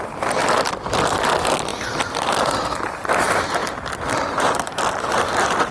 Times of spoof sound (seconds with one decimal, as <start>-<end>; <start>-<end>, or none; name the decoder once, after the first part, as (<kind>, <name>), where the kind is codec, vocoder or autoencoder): none